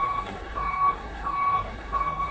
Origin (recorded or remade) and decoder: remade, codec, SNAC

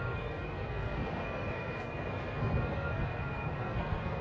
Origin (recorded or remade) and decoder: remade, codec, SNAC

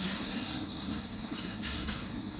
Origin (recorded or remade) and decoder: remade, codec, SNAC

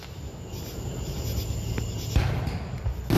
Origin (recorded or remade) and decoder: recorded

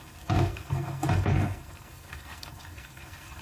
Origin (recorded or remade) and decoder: remade, codec, SNAC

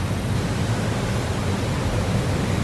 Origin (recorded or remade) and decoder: recorded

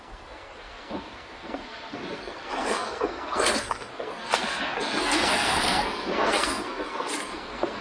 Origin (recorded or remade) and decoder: remade, codec, SNAC